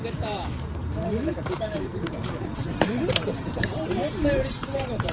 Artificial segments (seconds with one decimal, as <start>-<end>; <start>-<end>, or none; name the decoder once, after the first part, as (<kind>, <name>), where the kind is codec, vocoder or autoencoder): 0.0-5.1 (vocoder, BigVGAN v2)